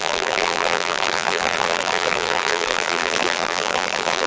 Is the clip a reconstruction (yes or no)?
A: yes